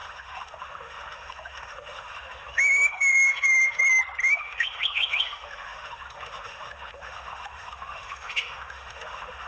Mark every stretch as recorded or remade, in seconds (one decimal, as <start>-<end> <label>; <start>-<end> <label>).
0.0-3.8 remade; 3.8-4.2 recorded; 4.2-9.5 remade